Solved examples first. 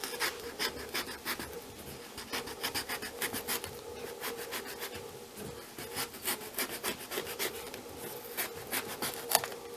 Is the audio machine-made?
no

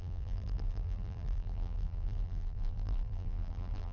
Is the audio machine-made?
yes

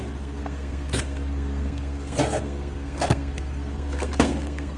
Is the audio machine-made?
yes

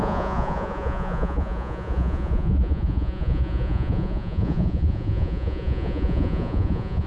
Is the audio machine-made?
yes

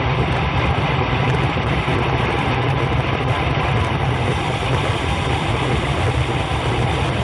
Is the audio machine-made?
no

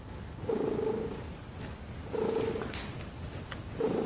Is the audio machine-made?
no